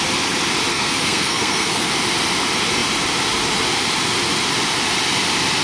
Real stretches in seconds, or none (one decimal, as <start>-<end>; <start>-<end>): 0.0-0.7; 1.9-5.6